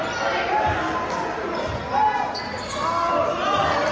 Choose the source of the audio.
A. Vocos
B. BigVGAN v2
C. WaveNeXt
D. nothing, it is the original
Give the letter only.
D